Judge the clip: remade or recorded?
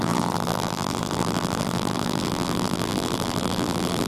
remade